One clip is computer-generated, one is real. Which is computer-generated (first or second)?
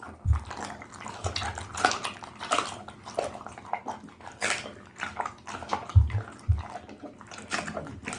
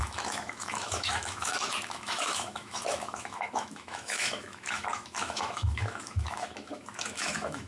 second